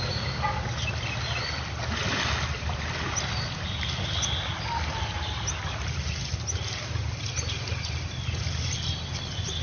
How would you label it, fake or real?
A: real